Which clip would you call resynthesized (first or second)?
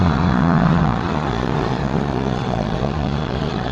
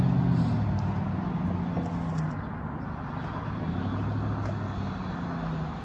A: first